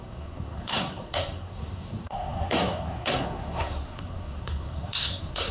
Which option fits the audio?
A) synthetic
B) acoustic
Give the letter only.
A